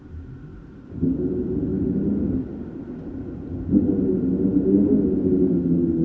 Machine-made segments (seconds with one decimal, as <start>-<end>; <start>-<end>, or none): none